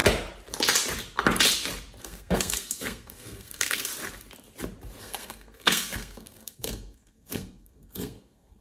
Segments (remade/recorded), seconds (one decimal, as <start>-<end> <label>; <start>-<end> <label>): 0.0-2.0 recorded; 2.0-3.9 remade; 3.9-5.0 recorded; 5.0-8.6 remade

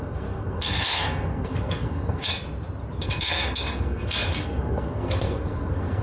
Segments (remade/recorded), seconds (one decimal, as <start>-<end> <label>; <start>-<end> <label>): 0.0-2.3 remade; 2.3-3.0 recorded; 3.0-6.0 remade

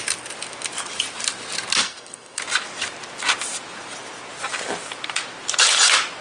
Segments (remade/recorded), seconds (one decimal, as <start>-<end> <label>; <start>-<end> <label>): 0.0-1.8 recorded; 1.8-2.4 remade; 2.4-6.2 recorded

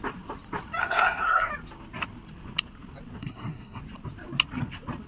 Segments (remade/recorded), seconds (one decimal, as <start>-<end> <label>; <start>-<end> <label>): 0.0-0.8 recorded; 0.8-1.5 remade; 1.5-3.2 recorded; 3.2-3.8 remade; 3.8-5.1 recorded

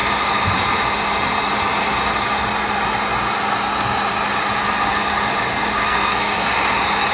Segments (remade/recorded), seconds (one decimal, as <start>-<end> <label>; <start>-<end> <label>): 0.0-5.8 recorded; 5.8-6.5 remade; 6.5-7.1 recorded